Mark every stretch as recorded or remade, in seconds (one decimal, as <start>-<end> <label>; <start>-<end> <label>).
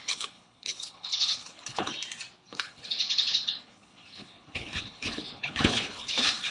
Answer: 0.0-1.9 remade; 1.9-2.5 recorded; 2.5-6.5 remade